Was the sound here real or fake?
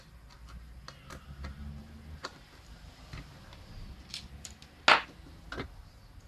real